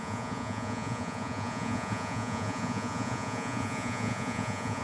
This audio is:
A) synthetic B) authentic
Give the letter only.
A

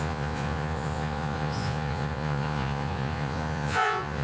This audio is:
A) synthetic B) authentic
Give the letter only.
A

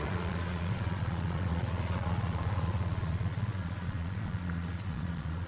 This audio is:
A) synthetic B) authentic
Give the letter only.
A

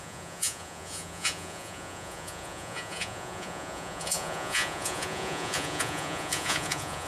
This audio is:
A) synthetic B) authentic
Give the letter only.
A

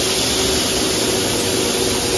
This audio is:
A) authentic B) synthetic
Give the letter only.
A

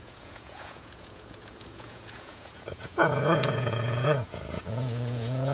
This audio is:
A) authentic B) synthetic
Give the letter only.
B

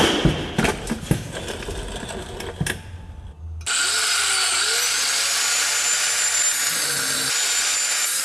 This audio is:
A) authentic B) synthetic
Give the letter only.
A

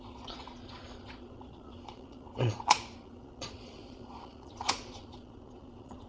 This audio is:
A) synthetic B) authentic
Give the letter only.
A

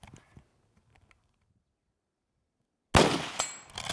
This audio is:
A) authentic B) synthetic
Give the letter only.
A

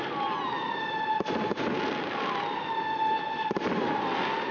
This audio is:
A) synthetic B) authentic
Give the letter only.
B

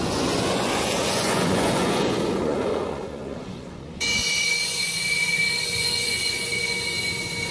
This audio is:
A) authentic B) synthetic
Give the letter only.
B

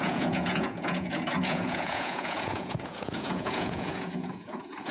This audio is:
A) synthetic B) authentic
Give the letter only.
A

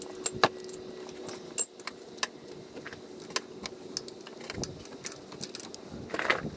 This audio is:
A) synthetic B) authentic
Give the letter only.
B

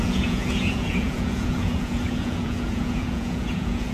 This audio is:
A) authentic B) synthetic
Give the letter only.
B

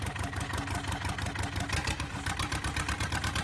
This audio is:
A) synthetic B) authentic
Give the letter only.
B